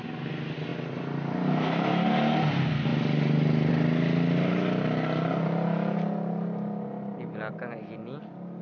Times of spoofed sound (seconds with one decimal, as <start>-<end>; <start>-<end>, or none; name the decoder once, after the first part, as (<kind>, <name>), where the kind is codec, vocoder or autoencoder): none